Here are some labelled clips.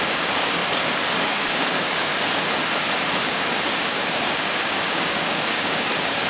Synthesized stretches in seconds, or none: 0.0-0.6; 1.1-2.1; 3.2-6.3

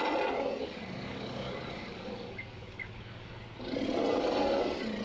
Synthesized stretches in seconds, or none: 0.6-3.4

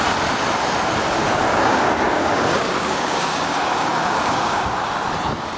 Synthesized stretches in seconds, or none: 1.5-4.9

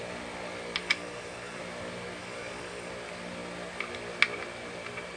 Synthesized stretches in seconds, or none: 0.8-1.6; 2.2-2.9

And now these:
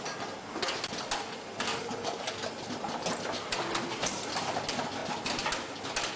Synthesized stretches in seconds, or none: 1.7-2.5

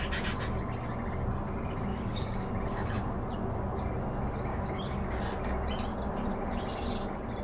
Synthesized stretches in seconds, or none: 1.9-2.5; 4.5-5.2

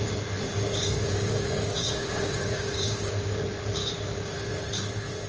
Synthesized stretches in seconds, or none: 0.8-3.4; 3.8-4.3